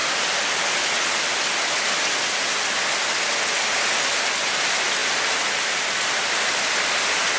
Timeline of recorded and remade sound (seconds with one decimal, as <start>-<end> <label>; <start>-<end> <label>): 0.0-7.4 recorded